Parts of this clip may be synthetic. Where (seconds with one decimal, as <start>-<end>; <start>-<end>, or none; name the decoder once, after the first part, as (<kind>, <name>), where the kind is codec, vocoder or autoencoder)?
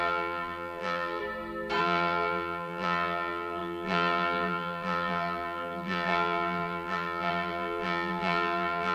0.0-1.2 (vocoder, BigVGAN v2); 1.8-8.9